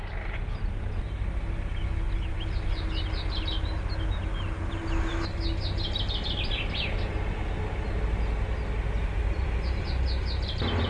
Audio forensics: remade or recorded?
recorded